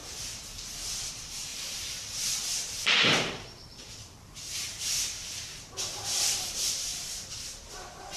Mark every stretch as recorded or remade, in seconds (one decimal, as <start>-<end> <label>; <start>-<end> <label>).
0.0-1.1 recorded; 1.1-8.2 remade